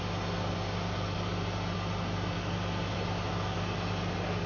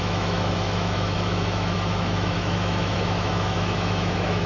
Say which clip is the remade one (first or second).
second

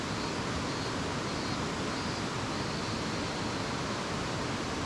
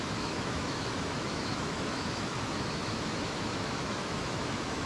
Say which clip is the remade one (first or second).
second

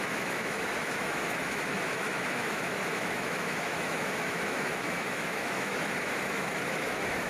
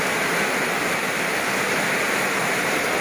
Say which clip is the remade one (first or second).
first